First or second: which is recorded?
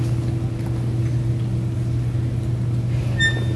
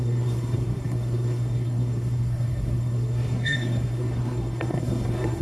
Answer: first